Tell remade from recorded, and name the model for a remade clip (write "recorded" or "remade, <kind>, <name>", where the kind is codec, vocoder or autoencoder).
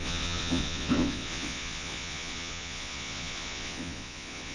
remade, vocoder, Vocos